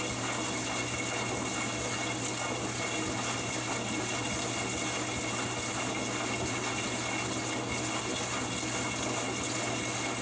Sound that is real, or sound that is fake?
real